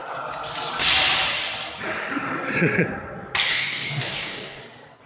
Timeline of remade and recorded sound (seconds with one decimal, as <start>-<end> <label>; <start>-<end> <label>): 0.0-3.5 recorded; 3.5-4.6 remade; 4.6-5.1 recorded